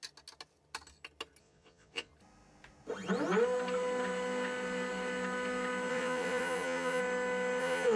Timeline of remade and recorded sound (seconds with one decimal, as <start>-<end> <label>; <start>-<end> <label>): 0.0-1.4 recorded; 1.4-2.1 remade; 2.1-5.9 recorded; 5.9-7.0 remade; 7.0-7.6 recorded; 7.6-8.0 remade